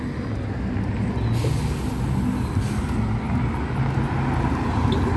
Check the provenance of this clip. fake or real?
real